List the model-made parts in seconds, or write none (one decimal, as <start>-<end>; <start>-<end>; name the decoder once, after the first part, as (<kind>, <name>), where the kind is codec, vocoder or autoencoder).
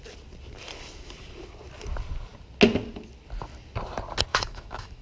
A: 4.3-5.0 (autoencoder, DAC-VAE)